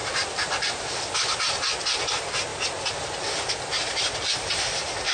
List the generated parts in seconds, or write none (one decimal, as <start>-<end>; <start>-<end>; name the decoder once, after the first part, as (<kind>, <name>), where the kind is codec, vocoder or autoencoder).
none